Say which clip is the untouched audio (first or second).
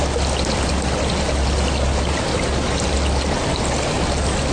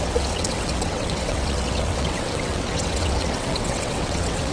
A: first